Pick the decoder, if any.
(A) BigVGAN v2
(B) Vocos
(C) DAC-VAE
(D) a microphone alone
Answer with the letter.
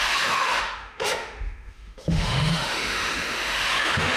C